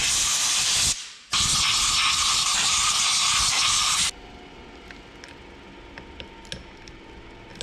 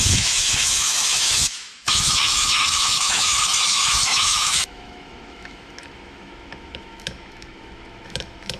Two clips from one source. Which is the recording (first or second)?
first